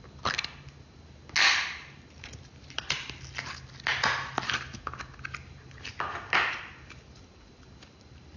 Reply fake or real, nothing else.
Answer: real